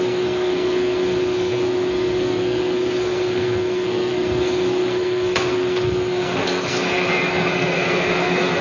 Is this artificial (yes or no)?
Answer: yes